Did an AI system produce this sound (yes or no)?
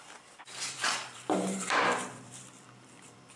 yes